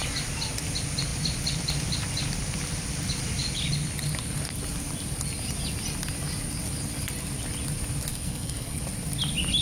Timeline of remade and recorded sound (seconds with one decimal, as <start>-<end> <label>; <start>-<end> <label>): 0.0-8.1 recorded; 8.1-8.8 remade; 8.8-9.6 recorded